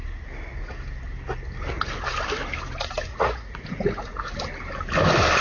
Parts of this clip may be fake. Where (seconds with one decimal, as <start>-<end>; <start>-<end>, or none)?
3.1-4.3